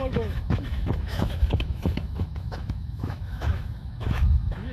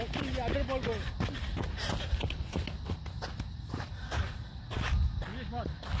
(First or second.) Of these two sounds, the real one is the second